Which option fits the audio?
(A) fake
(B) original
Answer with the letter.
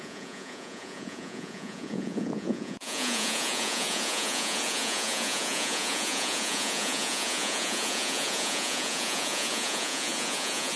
A